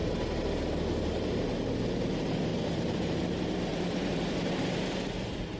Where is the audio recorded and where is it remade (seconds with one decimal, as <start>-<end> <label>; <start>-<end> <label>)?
0.0-2.5 recorded; 2.5-3.2 remade; 3.2-3.7 recorded; 3.7-4.8 remade; 4.8-5.6 recorded